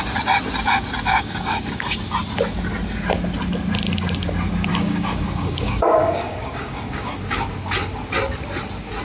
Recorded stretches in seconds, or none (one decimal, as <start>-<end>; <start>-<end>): 0.0-1.1; 2.0-4.7; 7.1-9.0